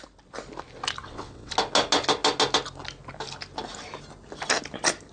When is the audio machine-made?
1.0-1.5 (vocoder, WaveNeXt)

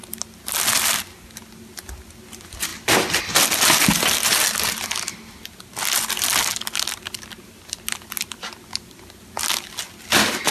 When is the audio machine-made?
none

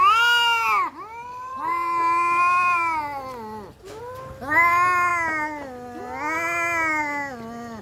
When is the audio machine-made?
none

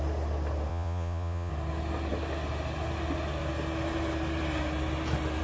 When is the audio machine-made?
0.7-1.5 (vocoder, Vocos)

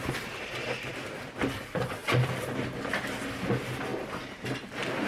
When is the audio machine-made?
none

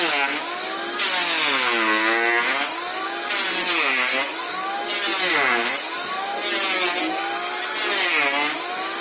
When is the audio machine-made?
none

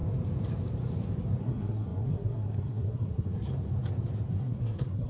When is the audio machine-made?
1.4-3.5 (codec, SNAC); 4.3-5.1